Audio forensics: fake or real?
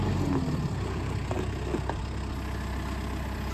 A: real